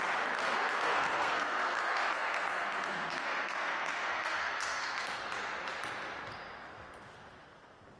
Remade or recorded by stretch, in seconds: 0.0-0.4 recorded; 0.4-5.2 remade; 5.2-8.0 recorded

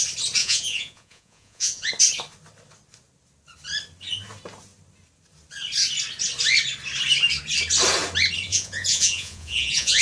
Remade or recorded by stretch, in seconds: 0.0-0.4 recorded; 0.4-1.9 remade; 1.9-8.5 recorded; 8.5-10.0 remade

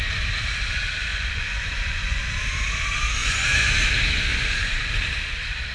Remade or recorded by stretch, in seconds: 0.0-1.1 recorded; 1.1-2.2 remade; 2.2-3.2 recorded; 3.2-3.7 remade; 3.7-4.3 recorded; 4.3-4.9 remade; 4.9-5.7 recorded

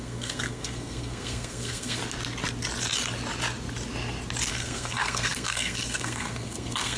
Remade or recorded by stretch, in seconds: 0.0-2.0 remade; 2.0-4.5 recorded; 4.5-7.0 remade

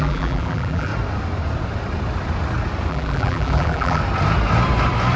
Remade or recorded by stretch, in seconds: 0.0-0.9 remade; 0.9-2.9 recorded; 2.9-4.0 remade; 4.0-5.2 recorded